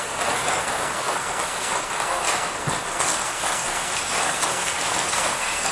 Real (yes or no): no